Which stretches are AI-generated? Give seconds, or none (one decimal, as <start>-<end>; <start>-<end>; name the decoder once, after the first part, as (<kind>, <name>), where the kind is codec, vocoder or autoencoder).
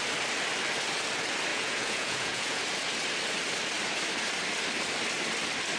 1.5-2.6 (vocoder, Vocos)